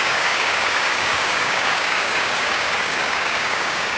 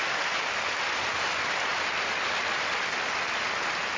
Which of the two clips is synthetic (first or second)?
first